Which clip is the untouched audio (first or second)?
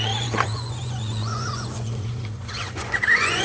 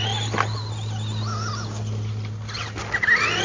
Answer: second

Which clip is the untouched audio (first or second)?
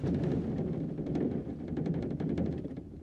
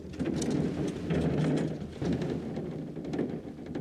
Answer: second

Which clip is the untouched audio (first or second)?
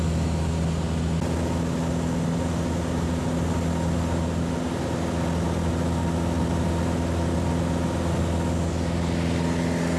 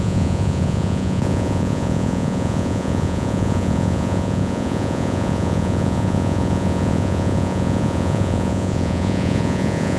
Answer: first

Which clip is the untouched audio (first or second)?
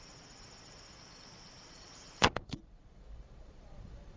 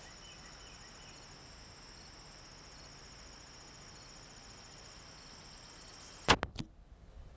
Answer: second